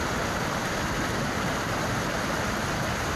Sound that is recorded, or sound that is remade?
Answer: recorded